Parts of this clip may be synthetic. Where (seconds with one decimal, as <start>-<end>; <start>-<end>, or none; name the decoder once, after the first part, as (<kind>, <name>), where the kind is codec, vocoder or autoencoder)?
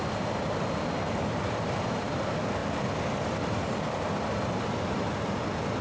none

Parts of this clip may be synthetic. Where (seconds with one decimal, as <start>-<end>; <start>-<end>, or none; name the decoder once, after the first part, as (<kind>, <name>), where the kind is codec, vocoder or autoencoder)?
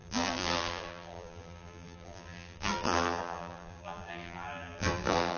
0.0-5.4 (vocoder, BigVGAN v2)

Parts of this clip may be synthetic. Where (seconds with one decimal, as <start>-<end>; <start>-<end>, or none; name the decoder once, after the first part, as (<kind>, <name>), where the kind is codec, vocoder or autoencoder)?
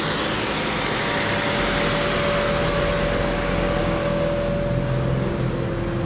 3.8-4.5 (codec, DAC)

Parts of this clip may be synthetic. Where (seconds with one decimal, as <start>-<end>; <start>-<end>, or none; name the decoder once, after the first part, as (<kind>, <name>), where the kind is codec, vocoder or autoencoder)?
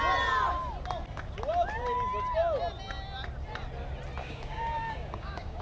4.2-5.6 (codec, DAC)